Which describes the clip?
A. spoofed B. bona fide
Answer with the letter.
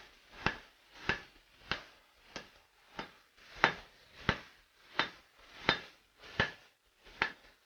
B